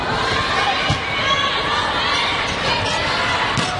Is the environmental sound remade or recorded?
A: recorded